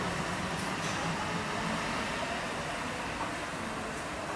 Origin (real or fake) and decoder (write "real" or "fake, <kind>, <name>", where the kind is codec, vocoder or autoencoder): real